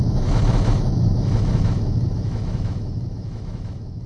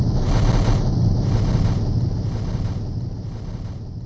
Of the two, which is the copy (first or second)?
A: first